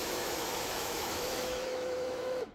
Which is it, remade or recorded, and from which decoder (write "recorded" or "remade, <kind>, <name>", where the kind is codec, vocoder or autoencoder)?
remade, autoencoder, DAC-VAE